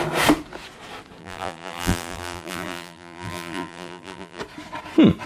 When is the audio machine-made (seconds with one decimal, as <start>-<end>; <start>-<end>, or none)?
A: 1.2-4.4